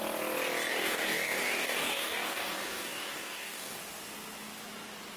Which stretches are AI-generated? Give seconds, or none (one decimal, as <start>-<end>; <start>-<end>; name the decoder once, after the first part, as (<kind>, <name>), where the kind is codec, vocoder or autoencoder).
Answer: 0.7-3.8 (codec, DAC)